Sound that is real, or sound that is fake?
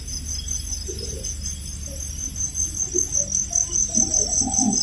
real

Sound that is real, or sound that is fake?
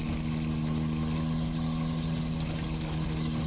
real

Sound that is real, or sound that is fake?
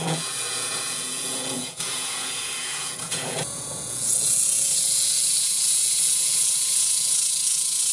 fake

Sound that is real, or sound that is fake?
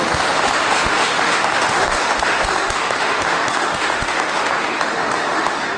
fake